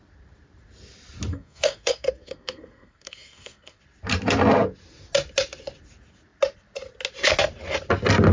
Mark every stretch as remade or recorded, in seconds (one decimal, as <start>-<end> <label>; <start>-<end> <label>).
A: 0.0-1.3 recorded; 1.3-3.8 remade; 3.8-8.3 recorded